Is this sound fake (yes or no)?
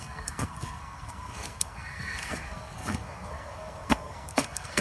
yes